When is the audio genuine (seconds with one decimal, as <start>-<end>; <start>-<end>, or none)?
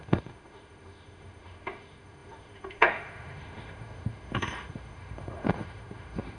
none